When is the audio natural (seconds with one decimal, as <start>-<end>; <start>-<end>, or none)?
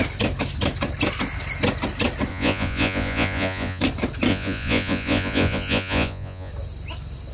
0.0-2.3; 3.8-4.3; 6.5-7.3